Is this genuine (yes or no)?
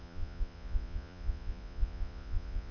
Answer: no